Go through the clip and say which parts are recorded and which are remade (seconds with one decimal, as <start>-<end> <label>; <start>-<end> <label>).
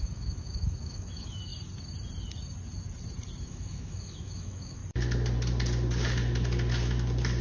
0.0-1.5 remade; 1.5-3.4 recorded; 3.4-4.8 remade; 4.8-7.4 recorded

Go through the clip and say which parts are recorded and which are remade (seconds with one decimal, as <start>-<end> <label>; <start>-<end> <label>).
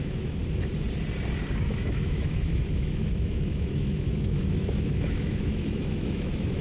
0.0-0.4 remade; 0.4-1.7 recorded; 1.7-6.6 remade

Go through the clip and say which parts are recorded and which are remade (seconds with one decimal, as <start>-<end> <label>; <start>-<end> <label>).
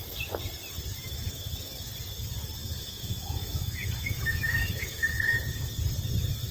0.0-1.0 recorded; 1.0-1.9 remade; 1.9-2.6 recorded; 2.6-5.2 remade; 5.2-6.5 recorded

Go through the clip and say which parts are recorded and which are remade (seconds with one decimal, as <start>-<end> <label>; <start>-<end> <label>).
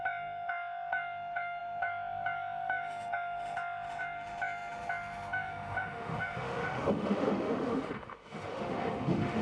0.0-9.4 remade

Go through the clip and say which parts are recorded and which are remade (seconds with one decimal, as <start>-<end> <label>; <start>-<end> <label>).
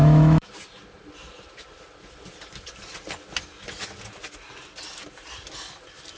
0.0-0.5 remade; 0.5-6.2 recorded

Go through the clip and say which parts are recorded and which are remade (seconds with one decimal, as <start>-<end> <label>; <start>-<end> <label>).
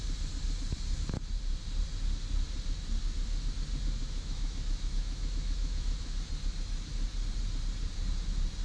0.0-4.0 recorded; 4.0-6.2 remade; 6.2-8.6 recorded